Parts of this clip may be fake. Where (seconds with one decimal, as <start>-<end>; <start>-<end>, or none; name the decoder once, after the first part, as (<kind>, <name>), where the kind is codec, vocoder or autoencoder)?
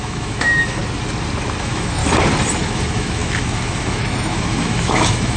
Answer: 0.0-0.8 (autoencoder, DAC-VAE); 1.6-2.0; 2.6-5.4